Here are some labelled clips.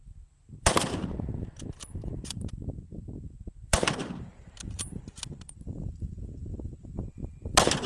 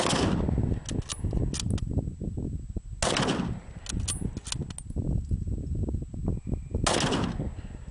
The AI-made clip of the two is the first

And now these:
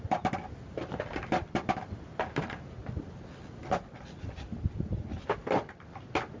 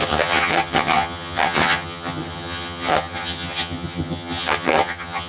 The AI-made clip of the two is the second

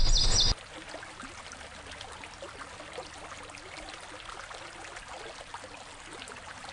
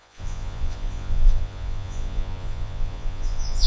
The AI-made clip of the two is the second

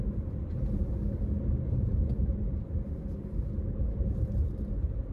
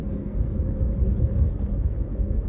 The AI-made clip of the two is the second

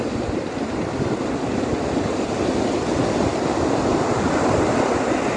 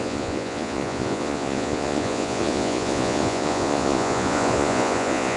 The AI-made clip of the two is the second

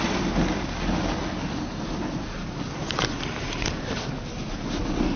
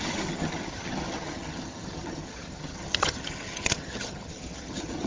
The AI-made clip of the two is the second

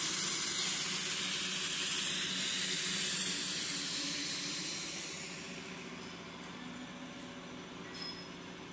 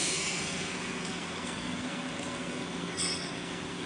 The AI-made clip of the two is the second